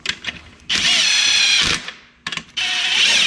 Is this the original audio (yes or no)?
yes